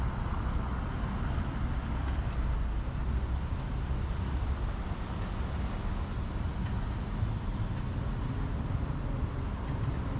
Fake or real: real